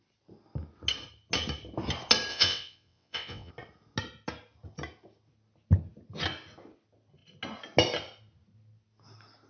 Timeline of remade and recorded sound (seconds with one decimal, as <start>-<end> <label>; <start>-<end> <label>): 0.0-2.3 recorded; 2.3-3.5 remade; 3.5-9.5 recorded